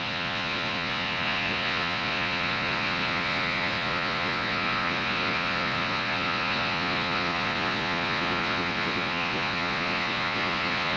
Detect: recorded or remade remade